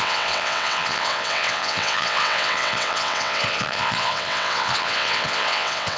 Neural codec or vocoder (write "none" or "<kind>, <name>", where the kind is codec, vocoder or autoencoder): vocoder, WaveNeXt